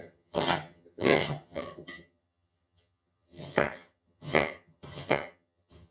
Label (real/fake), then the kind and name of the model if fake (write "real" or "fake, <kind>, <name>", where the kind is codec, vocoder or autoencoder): fake, vocoder, HiFi-GAN